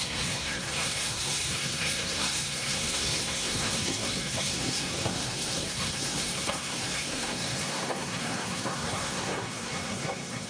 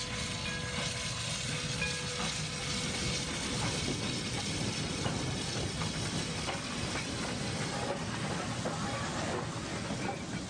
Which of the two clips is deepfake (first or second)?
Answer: first